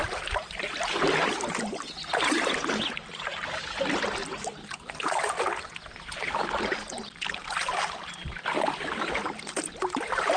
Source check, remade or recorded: recorded